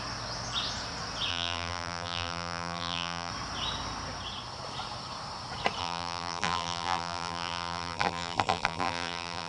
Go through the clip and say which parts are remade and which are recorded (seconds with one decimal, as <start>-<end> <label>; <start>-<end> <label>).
0.0-1.3 recorded; 1.3-3.3 remade; 3.3-5.8 recorded; 5.8-9.5 remade